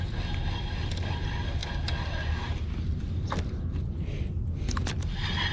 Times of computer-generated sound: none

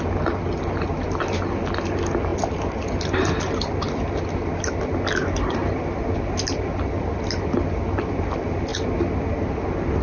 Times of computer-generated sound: none

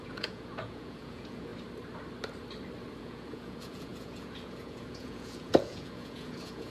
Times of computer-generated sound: 0.0-1.5 (vocoder, Vocos); 3.0-6.7

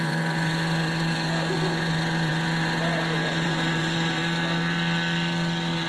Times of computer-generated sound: 0.0-4.2 (vocoder, Vocos)

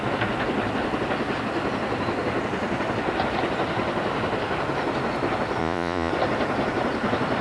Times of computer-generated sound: 5.6-6.1 (vocoder, Vocos)

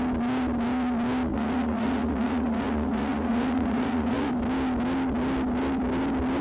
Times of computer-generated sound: 1.3-4.3 (vocoder, Vocos)